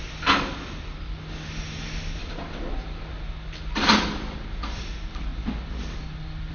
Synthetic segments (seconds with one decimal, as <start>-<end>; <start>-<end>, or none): none